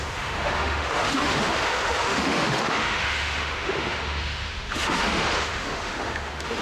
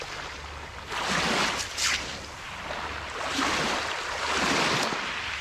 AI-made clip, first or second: first